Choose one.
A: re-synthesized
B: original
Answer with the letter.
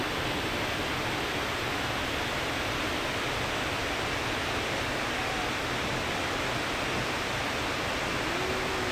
B